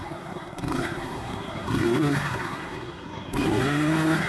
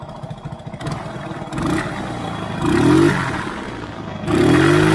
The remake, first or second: first